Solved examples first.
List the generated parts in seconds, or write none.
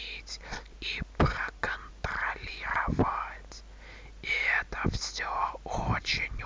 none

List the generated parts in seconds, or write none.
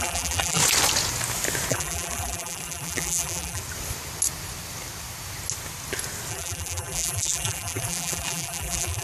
0.0-0.6 (vocoder, BigVGAN v2); 1.7-3.6; 6.3-9.0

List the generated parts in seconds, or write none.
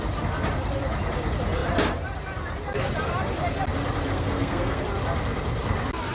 4.1-4.8 (codec, SNAC)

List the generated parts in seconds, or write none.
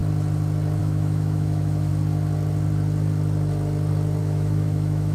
0.8-1.9 (autoencoder, DAC-VAE); 4.2-5.1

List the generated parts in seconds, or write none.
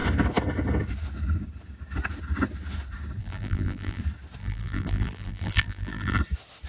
3.2-4.0 (vocoder, BigVGAN v2); 4.4-6.2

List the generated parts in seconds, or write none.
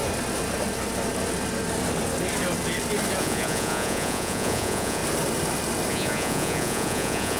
3.2-5.0 (vocoder, Vocos); 5.9-7.4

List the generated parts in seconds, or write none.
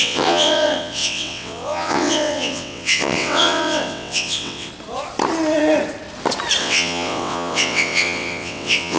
0.0-4.7 (vocoder, WaveNeXt); 6.6-9.0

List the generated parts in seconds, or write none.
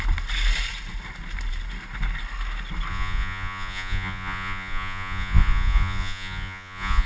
2.9-7.1 (vocoder, Vocos)